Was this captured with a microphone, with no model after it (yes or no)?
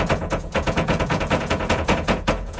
no